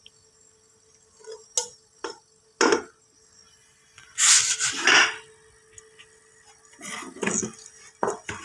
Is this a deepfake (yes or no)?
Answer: no